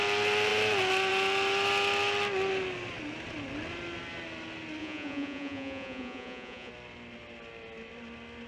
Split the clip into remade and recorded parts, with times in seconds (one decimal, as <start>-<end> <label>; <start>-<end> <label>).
0.0-4.8 recorded; 4.8-6.7 remade; 6.7-8.5 recorded